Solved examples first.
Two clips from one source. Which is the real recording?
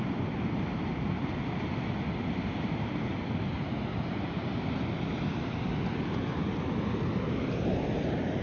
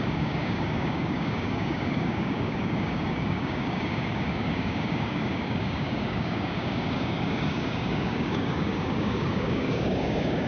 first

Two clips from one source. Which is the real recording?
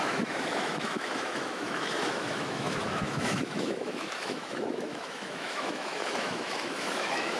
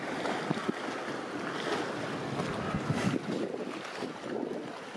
second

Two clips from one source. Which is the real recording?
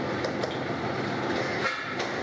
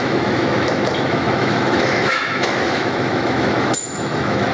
first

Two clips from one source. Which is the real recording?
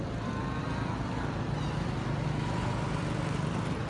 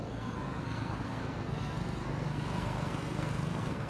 first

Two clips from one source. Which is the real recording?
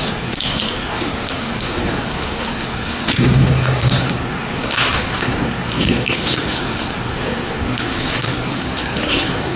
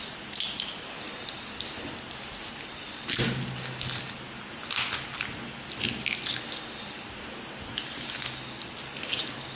second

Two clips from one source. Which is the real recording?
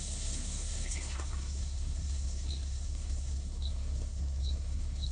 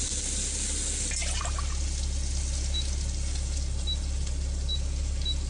second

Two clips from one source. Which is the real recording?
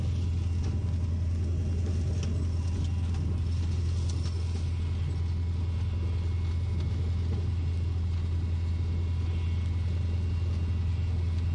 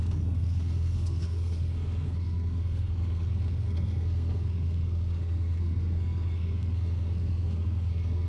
first